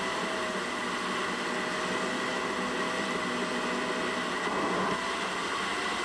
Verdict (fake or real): real